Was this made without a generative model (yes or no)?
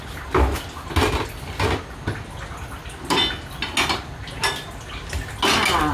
yes